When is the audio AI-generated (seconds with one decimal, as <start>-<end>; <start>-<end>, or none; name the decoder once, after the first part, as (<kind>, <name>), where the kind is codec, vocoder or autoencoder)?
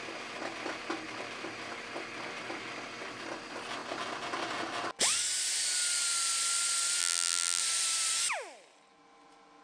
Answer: 7.0-7.6 (vocoder, BigVGAN v2)